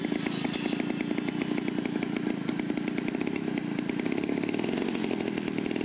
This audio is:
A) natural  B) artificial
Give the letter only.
A